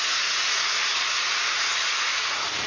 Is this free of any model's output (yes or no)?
yes